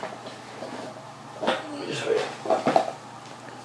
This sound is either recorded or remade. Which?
recorded